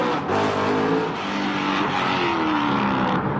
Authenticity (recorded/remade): recorded